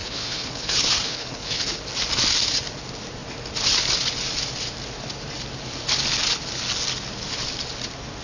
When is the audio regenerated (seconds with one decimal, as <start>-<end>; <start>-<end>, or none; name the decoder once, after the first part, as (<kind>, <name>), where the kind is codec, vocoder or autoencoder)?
0.0-1.8 (codec, HILCodec)